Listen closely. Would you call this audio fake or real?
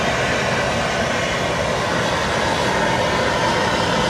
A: real